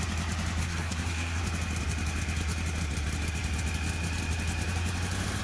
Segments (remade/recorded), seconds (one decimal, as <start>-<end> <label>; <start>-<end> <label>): 0.0-0.6 recorded; 0.6-1.4 remade; 1.4-5.4 recorded